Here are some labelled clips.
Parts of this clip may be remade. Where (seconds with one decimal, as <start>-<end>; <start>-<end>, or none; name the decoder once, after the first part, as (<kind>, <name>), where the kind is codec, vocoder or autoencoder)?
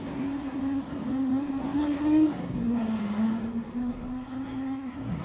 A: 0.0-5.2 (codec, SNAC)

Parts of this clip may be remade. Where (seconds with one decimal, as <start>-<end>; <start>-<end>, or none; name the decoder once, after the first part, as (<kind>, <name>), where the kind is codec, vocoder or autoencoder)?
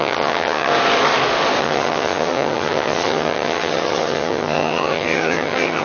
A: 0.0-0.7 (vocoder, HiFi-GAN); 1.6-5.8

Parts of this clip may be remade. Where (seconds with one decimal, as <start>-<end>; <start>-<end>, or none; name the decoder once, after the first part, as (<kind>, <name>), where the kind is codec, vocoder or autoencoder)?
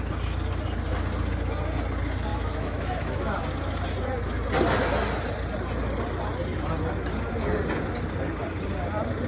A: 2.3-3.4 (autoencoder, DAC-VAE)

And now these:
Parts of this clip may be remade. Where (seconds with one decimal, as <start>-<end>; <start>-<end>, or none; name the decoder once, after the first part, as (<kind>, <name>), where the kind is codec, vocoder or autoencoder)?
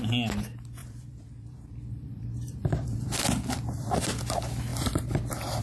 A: 0.8-4.2 (vocoder, BigVGAN v2); 4.7-5.6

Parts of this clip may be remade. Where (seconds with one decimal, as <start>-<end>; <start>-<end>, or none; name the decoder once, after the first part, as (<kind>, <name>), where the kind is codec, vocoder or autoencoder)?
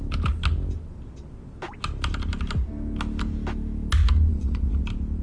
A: 4.3-4.8 (vocoder, Vocos)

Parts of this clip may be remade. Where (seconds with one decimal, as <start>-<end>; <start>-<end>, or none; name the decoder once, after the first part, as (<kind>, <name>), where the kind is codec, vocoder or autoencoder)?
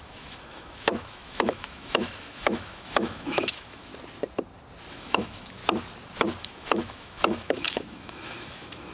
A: 0.0-3.9 (autoencoder, DAC-VAE); 4.9-5.6; 6.4-8.9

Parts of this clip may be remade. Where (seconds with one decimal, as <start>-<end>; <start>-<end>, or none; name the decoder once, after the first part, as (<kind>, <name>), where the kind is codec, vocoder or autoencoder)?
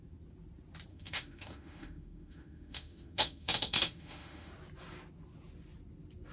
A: 0.9-4.5 (autoencoder, DAC-VAE)